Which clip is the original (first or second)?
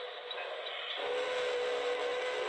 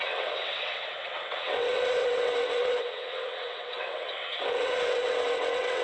first